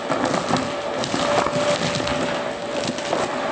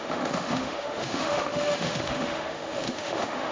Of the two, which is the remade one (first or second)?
second